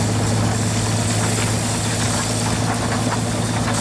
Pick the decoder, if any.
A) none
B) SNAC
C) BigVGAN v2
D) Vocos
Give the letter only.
A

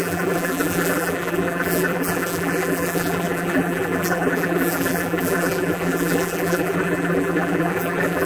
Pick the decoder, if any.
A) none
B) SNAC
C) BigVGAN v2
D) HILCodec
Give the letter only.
C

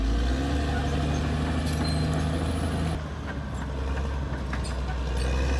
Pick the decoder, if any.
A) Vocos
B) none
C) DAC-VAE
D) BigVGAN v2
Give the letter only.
B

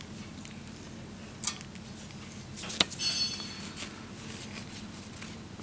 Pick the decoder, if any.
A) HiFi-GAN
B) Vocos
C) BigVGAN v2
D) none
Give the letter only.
D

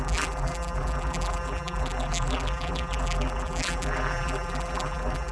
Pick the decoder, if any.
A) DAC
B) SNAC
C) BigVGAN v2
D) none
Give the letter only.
C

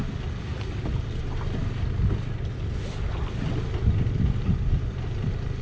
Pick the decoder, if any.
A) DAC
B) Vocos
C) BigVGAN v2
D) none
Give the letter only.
D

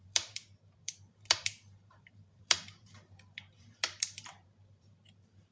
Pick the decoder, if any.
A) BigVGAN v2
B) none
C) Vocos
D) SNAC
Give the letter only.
A